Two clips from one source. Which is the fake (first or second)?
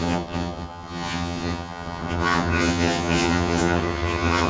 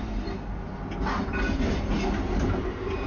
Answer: first